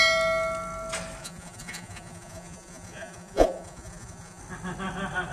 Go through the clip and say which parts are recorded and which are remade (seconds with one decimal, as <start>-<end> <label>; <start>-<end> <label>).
0.0-1.2 recorded; 1.2-4.4 remade; 4.4-5.3 recorded